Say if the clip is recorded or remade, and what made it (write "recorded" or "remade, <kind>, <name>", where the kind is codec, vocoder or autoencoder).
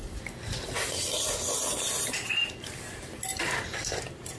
remade, vocoder, BigVGAN v2